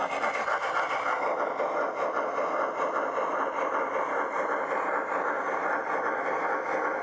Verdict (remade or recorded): recorded